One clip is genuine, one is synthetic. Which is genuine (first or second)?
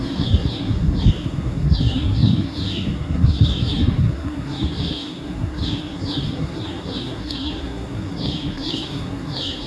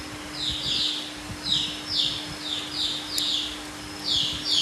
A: second